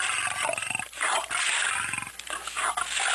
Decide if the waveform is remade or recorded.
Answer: recorded